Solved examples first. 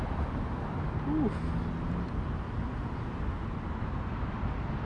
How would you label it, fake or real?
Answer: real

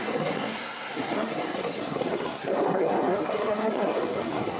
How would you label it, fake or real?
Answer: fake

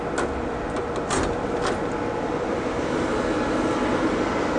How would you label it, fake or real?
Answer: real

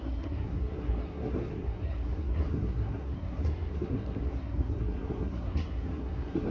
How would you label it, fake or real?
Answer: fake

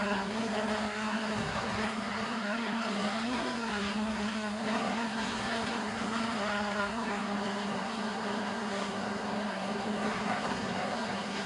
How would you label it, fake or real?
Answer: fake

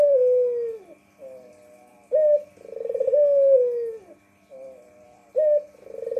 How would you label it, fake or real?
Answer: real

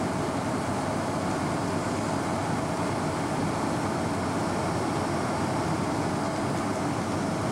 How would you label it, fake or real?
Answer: real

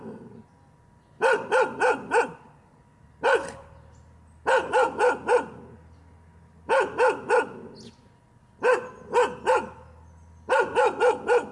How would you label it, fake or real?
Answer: real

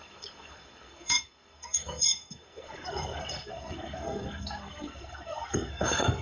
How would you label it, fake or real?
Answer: fake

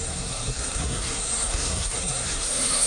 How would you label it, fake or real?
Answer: fake